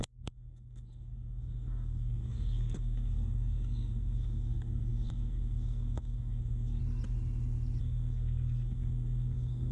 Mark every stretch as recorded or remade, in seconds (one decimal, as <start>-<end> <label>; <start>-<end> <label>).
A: 0.0-6.8 remade; 6.8-7.8 recorded; 7.8-9.7 remade